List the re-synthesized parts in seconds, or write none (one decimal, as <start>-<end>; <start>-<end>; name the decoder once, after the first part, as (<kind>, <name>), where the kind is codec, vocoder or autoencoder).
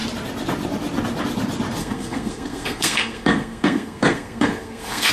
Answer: 1.8-5.1 (codec, SNAC)